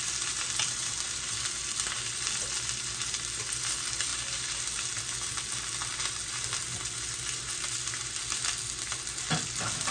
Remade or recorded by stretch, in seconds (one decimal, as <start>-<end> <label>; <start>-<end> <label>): 0.0-9.9 recorded